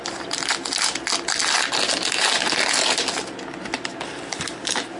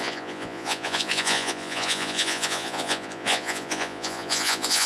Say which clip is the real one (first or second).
first